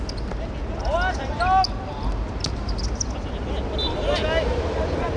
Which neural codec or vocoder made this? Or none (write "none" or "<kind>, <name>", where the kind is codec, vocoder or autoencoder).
none